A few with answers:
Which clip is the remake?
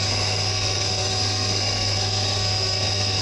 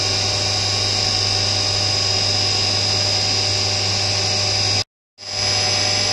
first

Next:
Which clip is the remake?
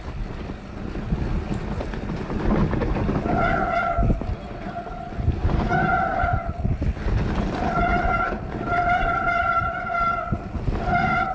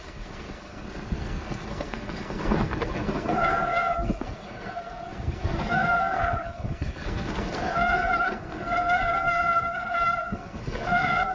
second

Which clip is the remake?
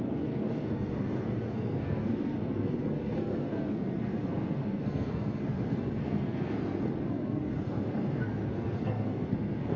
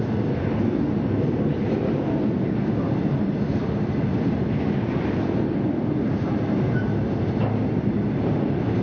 first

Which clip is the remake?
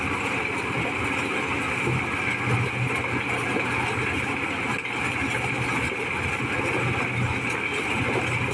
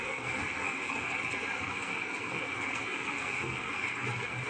second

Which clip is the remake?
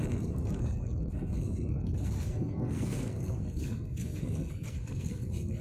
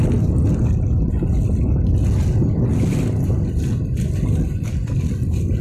first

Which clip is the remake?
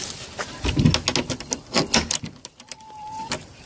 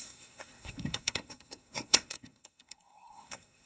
second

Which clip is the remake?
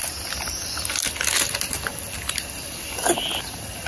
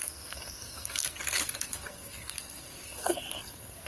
second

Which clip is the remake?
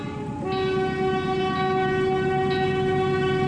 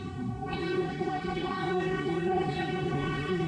second